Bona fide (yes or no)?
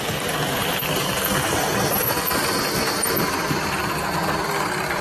no